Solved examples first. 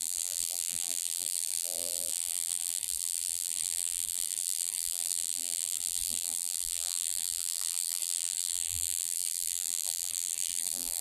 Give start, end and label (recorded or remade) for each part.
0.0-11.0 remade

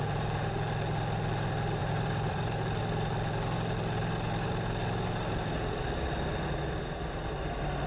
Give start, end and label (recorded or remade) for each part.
0.0-1.8 recorded; 1.8-2.8 remade; 2.8-7.9 recorded

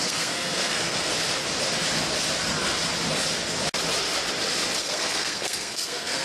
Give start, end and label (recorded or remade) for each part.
0.0-1.1 remade; 1.1-4.8 recorded; 4.8-6.2 remade

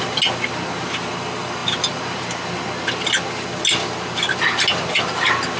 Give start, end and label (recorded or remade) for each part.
0.0-5.6 recorded

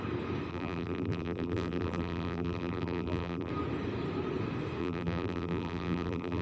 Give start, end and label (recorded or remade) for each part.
0.0-0.5 recorded; 0.5-3.5 remade; 3.5-4.8 recorded; 4.8-6.4 remade